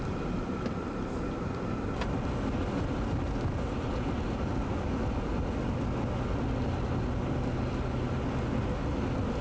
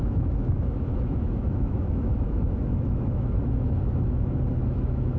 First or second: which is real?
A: first